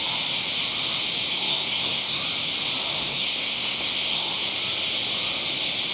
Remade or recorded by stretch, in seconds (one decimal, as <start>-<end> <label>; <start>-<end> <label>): 0.0-1.3 recorded; 1.3-2.2 remade; 2.2-2.9 recorded; 2.9-4.3 remade; 4.3-5.9 recorded